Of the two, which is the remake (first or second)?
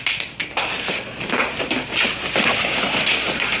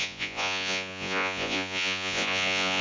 second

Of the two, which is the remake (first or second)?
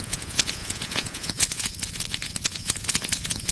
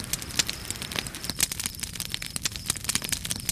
first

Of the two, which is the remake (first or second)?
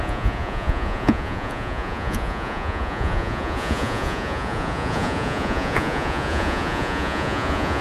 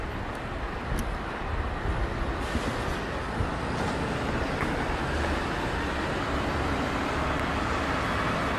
first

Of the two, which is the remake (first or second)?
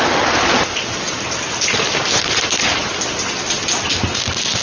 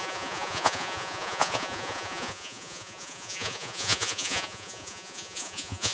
second